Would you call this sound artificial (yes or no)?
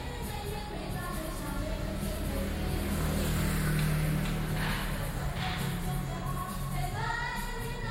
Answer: no